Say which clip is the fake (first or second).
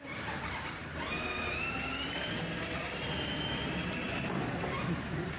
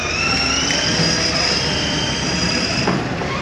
second